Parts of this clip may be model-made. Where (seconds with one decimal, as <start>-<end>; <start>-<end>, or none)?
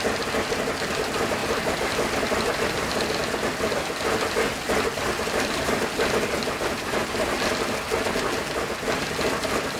none